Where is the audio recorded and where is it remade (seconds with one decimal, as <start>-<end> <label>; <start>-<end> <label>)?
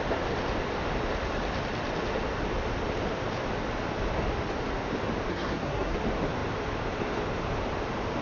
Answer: 0.0-5.3 recorded; 5.3-6.0 remade; 6.0-8.2 recorded